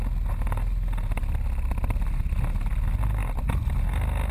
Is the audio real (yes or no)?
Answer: yes